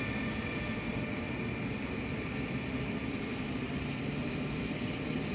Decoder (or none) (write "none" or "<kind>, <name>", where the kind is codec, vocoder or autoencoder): none